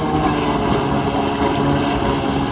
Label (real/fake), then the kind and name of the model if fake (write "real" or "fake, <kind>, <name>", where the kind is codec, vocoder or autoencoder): real